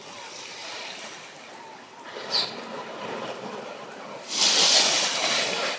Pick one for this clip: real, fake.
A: real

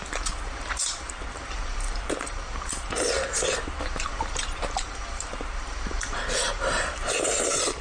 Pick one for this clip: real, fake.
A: fake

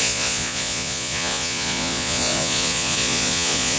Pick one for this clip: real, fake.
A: fake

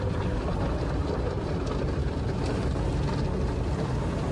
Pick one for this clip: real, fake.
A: real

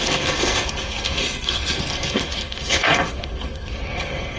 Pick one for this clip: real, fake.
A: fake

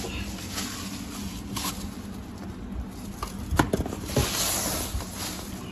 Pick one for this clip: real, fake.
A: real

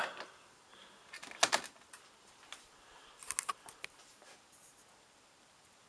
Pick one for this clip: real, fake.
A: real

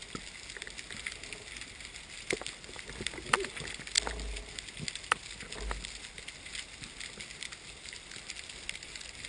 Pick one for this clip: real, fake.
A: real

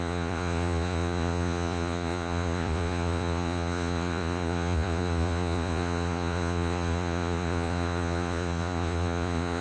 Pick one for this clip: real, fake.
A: fake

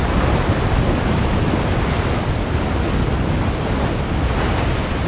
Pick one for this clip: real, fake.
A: real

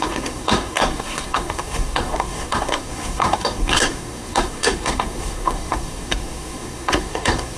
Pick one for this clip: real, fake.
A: fake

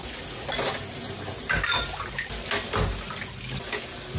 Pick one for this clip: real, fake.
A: real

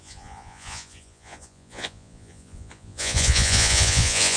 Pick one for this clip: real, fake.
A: fake